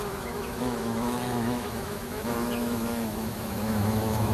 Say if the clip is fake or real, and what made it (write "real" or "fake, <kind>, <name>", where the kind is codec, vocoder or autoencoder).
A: fake, autoencoder, DAC-VAE